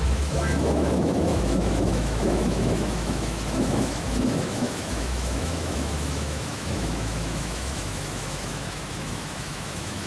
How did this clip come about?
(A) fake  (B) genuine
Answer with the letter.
A